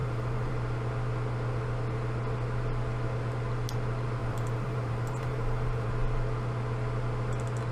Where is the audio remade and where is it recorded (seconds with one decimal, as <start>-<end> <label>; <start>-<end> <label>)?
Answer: 0.0-0.5 remade; 0.5-4.2 recorded; 4.2-5.9 remade; 5.9-7.7 recorded